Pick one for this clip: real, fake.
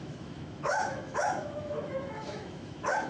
fake